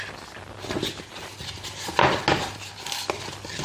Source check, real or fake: real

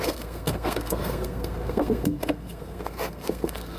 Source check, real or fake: fake